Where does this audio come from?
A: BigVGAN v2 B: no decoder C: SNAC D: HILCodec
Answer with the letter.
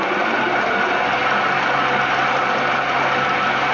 B